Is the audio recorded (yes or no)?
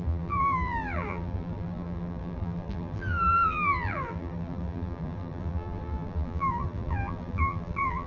no